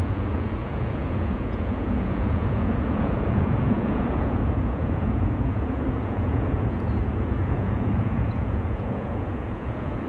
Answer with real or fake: fake